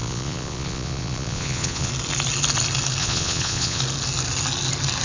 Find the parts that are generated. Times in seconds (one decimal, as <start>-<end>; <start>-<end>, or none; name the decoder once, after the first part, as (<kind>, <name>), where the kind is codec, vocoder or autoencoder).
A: 0.0-1.9 (vocoder, Vocos); 3.0-3.8